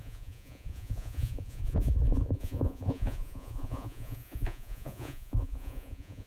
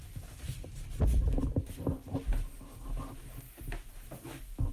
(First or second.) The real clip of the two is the second